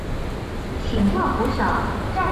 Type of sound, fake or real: real